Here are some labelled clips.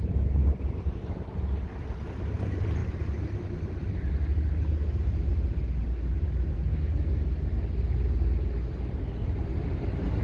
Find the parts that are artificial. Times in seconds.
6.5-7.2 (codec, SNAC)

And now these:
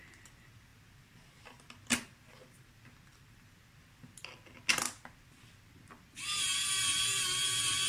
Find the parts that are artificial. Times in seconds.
none